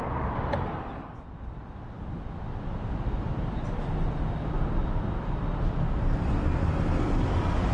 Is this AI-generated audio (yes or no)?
no